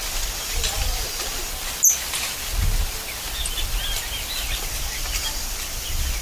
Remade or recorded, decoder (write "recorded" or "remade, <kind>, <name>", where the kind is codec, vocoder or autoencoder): recorded